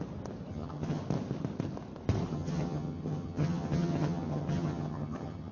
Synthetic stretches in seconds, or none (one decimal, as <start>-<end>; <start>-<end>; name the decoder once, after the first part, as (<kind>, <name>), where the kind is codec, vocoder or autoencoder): 0.5-1.0 (vocoder, HiFi-GAN); 2.3-5.5